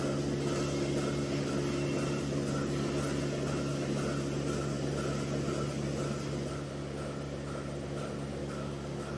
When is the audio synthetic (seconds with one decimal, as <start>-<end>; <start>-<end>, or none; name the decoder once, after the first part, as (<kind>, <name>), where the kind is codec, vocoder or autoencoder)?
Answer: 8.4-9.2 (codec, DAC)